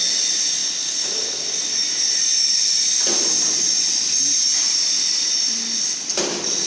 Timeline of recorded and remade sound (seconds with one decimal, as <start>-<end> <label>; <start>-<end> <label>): 0.0-6.7 recorded